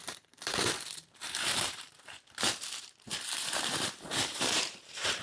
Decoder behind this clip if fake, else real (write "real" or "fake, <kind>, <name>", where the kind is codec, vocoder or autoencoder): fake, vocoder, BigVGAN v2